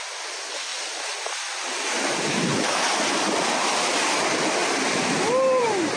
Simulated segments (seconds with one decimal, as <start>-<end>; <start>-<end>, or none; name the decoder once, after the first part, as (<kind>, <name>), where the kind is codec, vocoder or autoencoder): none